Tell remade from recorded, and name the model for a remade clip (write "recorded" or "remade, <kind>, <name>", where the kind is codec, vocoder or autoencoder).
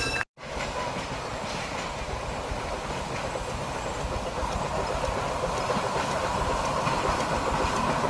recorded